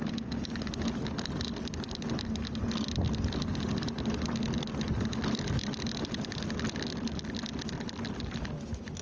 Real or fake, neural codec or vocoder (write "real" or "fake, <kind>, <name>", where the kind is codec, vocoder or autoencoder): real